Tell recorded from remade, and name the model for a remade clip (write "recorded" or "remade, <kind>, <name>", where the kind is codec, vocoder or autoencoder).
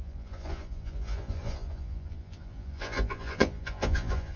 remade, vocoder, Vocos